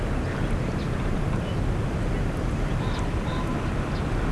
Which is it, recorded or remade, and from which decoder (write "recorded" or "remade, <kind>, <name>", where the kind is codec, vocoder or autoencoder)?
recorded